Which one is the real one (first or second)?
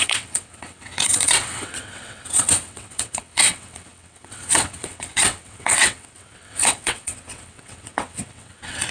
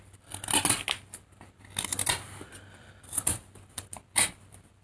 second